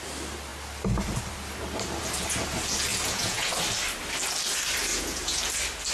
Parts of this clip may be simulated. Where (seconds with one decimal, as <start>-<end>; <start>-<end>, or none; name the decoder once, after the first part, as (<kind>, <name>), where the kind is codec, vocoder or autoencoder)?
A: 2.9-3.5 (vocoder, Vocos); 4.9-5.4